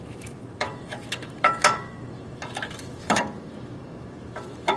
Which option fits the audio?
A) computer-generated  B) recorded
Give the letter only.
A